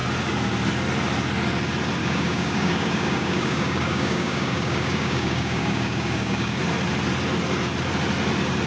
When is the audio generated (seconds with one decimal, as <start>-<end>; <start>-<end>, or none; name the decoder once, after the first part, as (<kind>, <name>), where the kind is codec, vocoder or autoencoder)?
2.0-6.6 (codec, DAC)